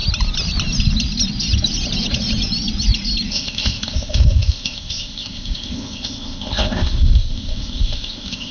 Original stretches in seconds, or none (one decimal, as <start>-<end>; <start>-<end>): 0.0-3.3